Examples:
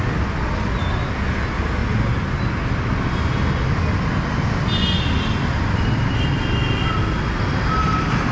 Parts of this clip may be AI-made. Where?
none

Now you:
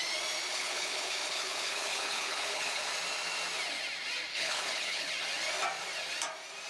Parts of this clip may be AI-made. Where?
0.5-2.9 (codec, HILCodec); 4.3-5.1